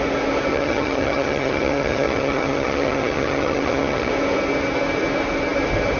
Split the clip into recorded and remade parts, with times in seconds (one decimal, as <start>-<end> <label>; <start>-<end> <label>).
0.0-0.5 recorded; 0.5-4.1 remade; 4.1-6.0 recorded